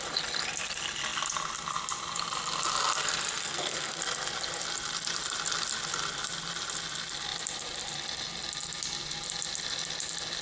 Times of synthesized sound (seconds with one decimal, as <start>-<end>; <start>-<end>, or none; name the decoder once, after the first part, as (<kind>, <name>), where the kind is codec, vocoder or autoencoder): 3.4-4.0 (codec, SNAC)